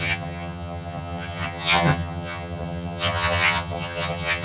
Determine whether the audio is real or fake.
fake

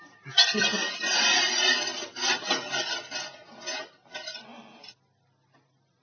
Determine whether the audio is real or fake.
real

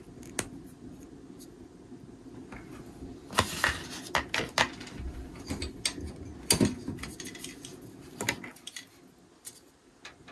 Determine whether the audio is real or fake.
real